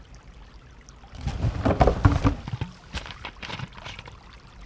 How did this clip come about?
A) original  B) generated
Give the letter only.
A